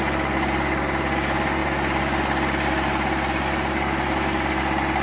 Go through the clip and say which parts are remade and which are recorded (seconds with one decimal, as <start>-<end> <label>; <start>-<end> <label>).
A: 0.0-5.0 recorded